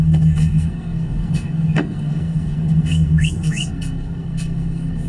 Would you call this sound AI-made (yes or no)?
yes